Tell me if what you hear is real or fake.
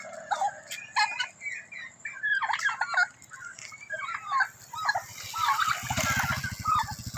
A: real